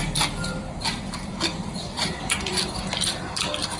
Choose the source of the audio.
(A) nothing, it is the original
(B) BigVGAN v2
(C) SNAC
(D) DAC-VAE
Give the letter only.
B